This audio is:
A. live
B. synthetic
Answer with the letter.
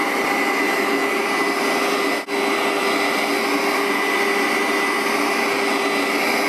A